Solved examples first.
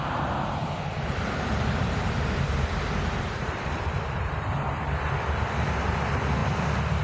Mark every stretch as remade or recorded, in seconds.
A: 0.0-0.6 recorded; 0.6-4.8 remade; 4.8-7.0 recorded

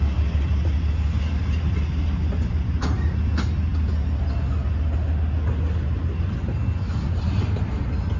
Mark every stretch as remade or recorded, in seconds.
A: 0.0-8.2 recorded